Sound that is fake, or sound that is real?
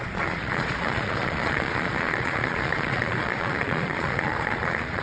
fake